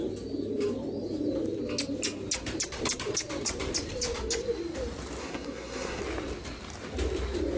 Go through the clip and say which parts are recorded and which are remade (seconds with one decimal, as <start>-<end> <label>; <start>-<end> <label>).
0.0-5.2 recorded; 5.2-6.0 remade; 6.0-7.6 recorded

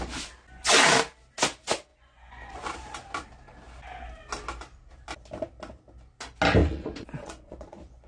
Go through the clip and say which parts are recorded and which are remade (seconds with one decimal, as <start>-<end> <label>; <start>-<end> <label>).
0.0-1.9 recorded; 1.9-2.7 remade; 2.7-6.6 recorded; 6.6-8.1 remade

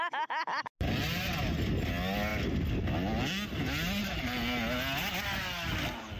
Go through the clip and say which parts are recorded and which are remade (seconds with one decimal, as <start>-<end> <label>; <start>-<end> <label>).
0.0-6.2 recorded

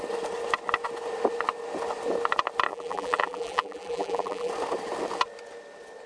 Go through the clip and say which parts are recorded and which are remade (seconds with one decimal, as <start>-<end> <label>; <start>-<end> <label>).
0.0-2.7 recorded; 2.7-4.5 remade; 4.5-6.1 recorded

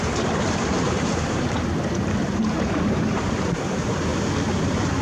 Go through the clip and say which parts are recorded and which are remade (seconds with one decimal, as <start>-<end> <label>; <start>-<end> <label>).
0.0-4.1 remade; 4.1-4.6 recorded; 4.6-5.0 remade

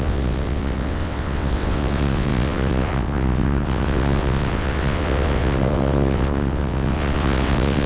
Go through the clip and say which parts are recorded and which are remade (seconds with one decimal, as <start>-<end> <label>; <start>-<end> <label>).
0.0-7.9 remade

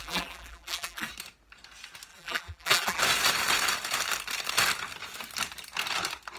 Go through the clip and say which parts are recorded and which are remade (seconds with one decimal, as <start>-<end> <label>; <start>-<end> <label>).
0.0-1.1 remade; 1.1-2.1 recorded; 2.1-3.0 remade; 3.0-6.4 recorded

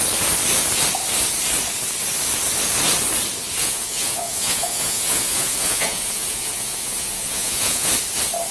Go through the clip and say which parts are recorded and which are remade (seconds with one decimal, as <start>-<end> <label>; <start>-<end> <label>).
0.0-3.6 recorded; 3.6-7.9 remade; 7.9-8.5 recorded